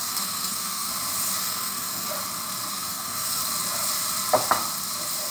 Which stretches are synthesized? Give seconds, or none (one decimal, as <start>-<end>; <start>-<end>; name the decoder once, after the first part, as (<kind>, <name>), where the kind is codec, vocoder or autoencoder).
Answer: 0.0-0.9 (codec, SNAC); 1.4-2.1; 2.7-3.4